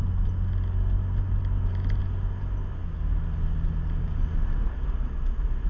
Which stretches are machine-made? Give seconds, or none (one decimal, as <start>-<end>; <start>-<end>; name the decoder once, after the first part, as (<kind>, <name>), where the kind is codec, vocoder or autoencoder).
none